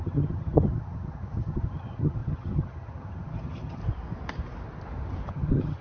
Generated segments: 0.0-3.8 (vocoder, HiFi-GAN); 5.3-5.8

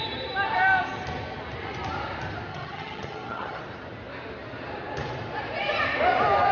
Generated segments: 2.5-3.6 (vocoder, HiFi-GAN)